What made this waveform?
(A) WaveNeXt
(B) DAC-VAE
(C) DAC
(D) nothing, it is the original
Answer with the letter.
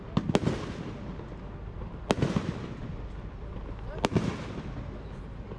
D